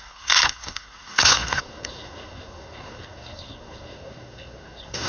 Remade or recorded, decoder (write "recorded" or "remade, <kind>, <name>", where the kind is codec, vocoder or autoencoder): remade, codec, SNAC